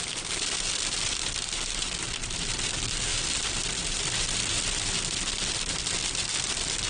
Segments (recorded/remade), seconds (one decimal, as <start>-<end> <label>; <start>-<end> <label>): 0.0-6.9 recorded

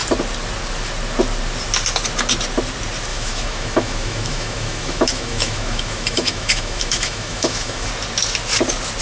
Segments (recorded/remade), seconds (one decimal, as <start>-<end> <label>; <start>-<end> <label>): 0.0-3.1 recorded; 3.1-7.9 remade; 7.9-9.0 recorded

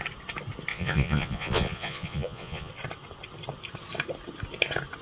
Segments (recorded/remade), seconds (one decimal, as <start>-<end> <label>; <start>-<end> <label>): 0.0-0.7 recorded; 0.7-2.7 remade; 2.7-5.0 recorded

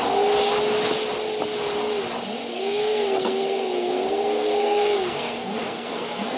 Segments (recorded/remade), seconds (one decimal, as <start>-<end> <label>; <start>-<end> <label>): 0.0-2.5 recorded; 2.5-6.4 remade